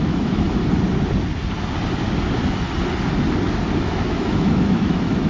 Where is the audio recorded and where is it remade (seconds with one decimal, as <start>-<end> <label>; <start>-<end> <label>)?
0.0-0.6 remade; 0.6-3.8 recorded; 3.8-5.3 remade